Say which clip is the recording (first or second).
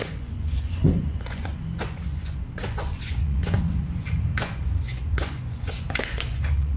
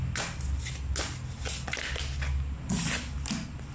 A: second